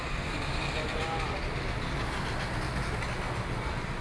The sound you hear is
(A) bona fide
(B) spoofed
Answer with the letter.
A